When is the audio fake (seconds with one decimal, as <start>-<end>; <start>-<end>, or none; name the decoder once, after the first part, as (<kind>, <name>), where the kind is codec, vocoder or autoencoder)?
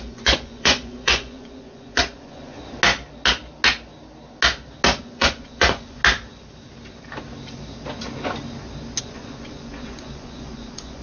0.0-2.6 (vocoder, Vocos); 5.0-6.0; 9.0-11.0